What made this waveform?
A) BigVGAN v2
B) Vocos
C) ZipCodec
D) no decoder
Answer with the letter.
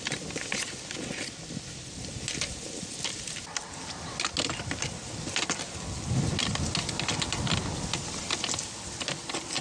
D